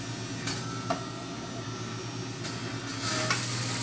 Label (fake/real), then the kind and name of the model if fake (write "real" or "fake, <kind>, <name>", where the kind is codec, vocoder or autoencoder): real